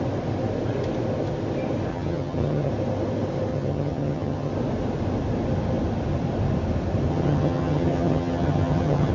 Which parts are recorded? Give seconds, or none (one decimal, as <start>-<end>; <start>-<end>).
0.0-1.9; 2.7-3.5; 4.5-7.1